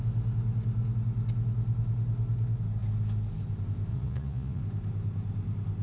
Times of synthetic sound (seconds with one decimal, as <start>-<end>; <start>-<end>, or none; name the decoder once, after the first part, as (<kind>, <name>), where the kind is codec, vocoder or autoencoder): 3.9-4.6 (vocoder, Vocos)